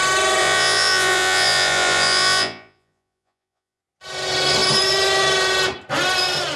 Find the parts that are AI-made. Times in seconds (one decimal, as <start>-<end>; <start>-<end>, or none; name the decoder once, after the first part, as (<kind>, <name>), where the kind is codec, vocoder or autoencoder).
0.4-3.8 (vocoder, Vocos)